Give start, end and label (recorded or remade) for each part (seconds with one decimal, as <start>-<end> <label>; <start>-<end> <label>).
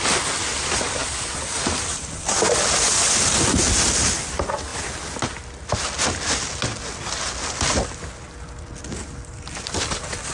0.0-10.3 recorded